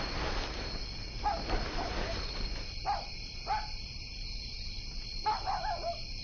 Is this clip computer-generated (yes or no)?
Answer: no